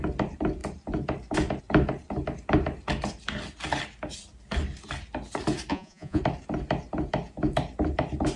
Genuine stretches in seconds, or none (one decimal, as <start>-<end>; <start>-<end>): 0.0-5.7; 6.2-8.4